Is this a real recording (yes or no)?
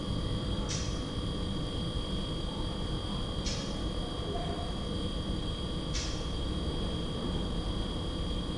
no